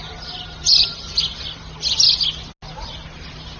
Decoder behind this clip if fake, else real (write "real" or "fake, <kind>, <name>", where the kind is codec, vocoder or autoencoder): real